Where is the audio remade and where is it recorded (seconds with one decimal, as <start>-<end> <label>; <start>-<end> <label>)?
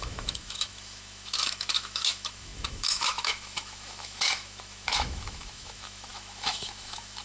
0.0-7.2 remade